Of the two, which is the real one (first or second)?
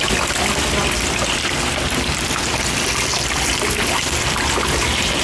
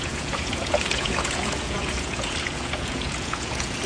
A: first